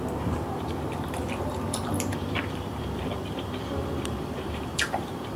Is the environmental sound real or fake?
fake